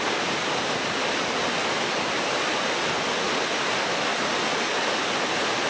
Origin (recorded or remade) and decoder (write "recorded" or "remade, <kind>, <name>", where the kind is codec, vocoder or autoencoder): recorded